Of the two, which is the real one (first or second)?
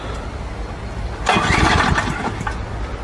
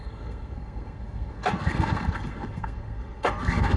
first